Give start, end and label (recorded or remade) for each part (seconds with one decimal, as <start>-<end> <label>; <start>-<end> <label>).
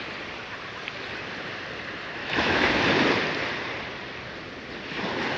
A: 0.0-2.2 recorded; 2.2-2.7 remade; 2.7-5.4 recorded